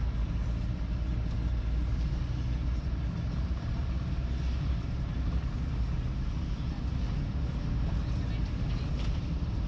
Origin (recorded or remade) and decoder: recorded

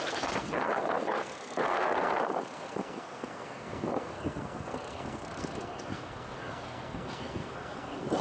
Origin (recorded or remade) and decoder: remade, codec, SNAC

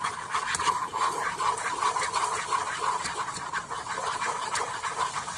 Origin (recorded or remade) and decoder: remade, vocoder, BigVGAN v2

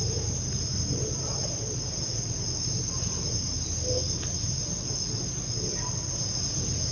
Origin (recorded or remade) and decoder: recorded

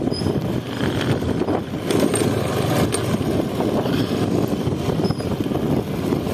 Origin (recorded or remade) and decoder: recorded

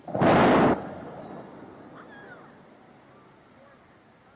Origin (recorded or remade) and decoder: recorded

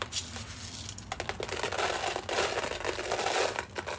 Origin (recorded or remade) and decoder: recorded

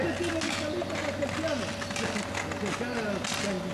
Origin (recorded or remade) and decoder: recorded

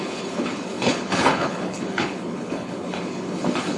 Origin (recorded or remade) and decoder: remade, codec, HILCodec